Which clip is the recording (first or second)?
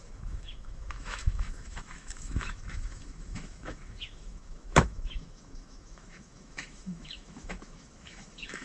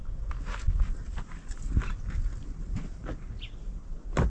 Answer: second